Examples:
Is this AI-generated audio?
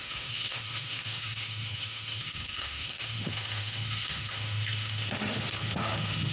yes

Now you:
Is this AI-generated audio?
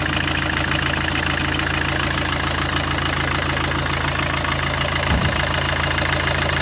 no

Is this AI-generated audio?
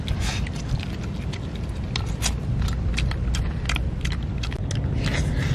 no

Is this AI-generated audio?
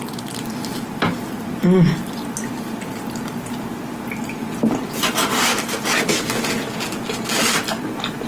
no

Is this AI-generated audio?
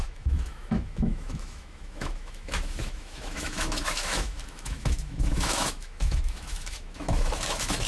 yes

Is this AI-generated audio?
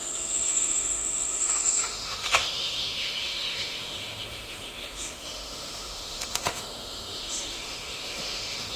yes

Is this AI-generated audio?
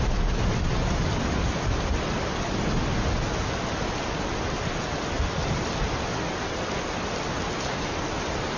no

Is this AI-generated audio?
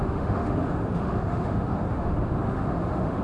yes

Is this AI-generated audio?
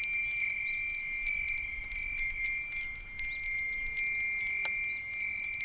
no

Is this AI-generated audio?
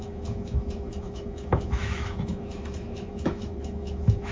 yes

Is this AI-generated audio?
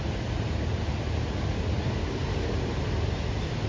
no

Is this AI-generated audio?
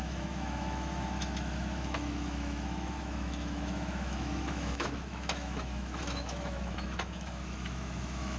yes